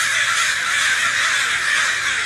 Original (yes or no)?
yes